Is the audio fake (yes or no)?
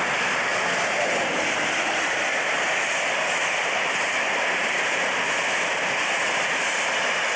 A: yes